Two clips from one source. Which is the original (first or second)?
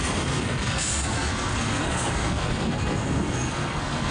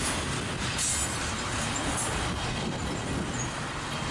second